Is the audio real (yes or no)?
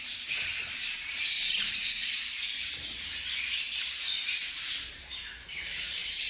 no